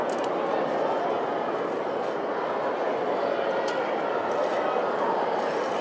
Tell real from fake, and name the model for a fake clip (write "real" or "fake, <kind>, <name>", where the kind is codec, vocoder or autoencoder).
real